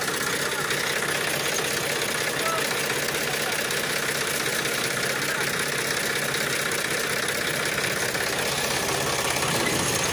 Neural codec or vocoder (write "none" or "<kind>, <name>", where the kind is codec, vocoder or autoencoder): none